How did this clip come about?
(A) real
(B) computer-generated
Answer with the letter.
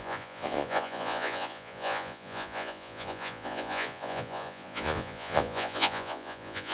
B